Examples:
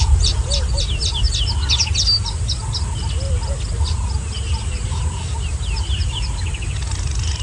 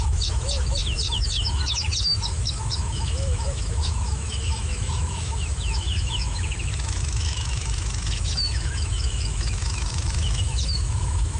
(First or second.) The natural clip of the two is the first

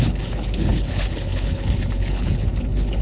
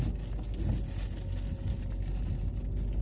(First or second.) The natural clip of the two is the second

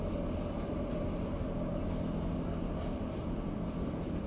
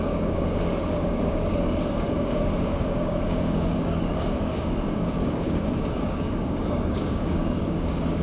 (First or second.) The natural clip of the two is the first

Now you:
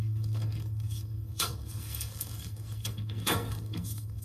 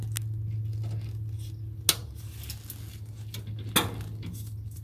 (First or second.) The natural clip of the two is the second